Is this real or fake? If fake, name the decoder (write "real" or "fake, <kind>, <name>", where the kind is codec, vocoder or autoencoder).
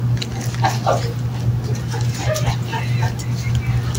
real